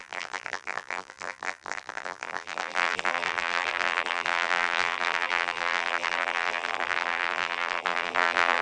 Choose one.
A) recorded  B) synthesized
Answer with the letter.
B